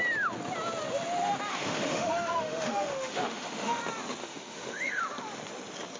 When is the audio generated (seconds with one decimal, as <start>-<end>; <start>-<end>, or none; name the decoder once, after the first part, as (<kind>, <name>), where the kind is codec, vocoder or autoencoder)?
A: 1.5-3.8 (autoencoder, DAC-VAE); 4.2-5.0